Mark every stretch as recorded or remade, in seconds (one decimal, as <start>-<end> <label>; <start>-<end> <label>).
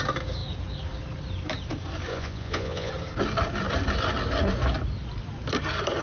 0.0-2.1 recorded; 2.1-2.9 remade; 2.9-6.0 recorded